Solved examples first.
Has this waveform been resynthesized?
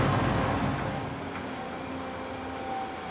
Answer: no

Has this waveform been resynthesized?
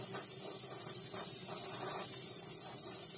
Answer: no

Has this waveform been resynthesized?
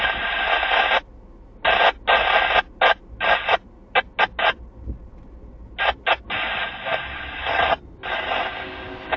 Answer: no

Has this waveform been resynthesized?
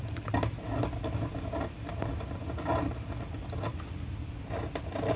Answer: no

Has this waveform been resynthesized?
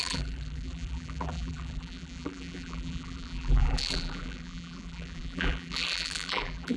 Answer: yes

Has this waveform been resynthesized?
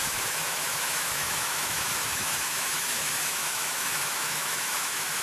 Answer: yes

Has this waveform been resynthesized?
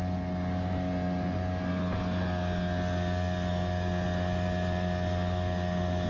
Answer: no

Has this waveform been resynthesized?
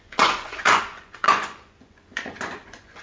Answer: yes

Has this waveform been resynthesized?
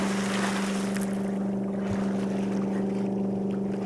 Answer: no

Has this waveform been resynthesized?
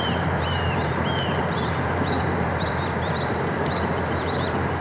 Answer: yes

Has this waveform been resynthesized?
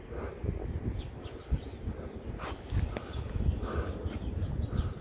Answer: no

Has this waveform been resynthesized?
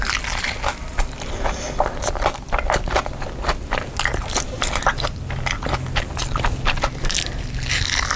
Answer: no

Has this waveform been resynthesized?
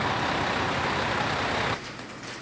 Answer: no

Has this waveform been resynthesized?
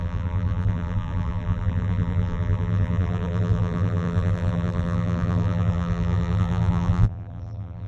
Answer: yes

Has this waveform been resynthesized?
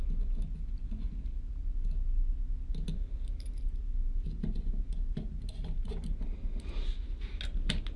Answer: no